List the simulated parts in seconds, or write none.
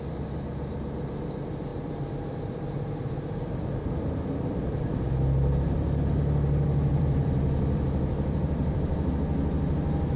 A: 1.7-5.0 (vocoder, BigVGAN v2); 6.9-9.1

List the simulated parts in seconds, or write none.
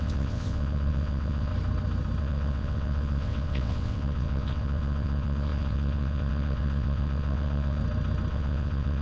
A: 0.0-1.5 (vocoder, WaveNeXt); 2.2-7.8; 8.3-9.0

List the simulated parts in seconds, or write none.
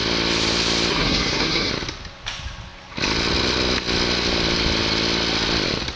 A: 0.9-1.7 (codec, SNAC)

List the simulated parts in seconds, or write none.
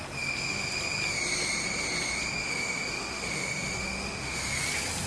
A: 2.4-4.6 (autoencoder, DAC-VAE)